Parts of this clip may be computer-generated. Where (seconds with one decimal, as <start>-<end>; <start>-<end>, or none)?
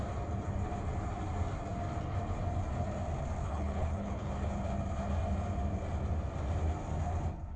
3.4-4.3